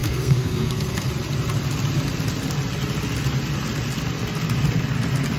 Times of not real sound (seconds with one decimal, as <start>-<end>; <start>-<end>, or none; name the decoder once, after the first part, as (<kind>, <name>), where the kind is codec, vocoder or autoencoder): 0.0-1.1 (codec, SNAC)